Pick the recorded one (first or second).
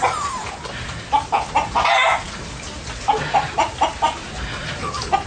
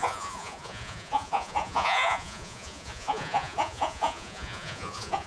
first